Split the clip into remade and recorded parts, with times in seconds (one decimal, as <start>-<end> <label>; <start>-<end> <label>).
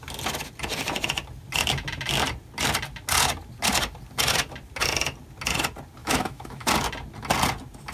0.0-6.0 recorded; 6.0-6.7 remade; 6.7-7.9 recorded